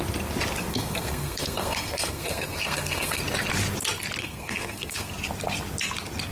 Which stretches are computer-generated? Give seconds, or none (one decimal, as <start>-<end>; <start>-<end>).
0.7-3.2; 4.2-5.1